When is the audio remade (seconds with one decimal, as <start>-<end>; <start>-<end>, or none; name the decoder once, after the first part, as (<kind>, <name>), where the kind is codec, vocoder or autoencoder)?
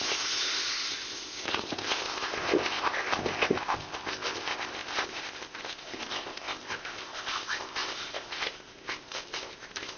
0.0-10.0 (codec, ZipCodec)